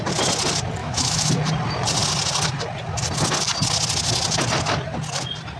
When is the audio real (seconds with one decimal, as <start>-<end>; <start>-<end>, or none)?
0.0-0.8; 1.3-5.6